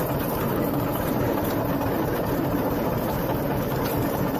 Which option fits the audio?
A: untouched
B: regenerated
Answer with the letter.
B